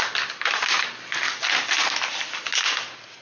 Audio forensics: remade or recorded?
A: recorded